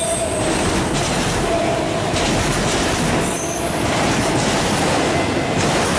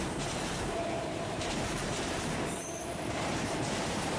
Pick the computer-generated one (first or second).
second